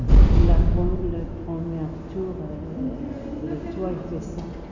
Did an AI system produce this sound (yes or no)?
no